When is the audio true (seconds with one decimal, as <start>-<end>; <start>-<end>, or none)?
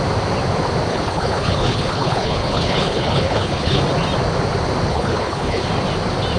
0.0-0.9; 3.8-4.9; 5.6-6.4